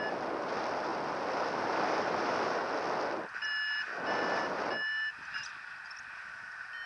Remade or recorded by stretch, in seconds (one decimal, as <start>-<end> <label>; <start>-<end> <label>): 0.0-6.9 recorded